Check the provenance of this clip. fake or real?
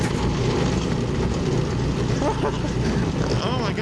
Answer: real